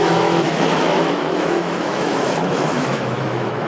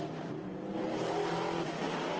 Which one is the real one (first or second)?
second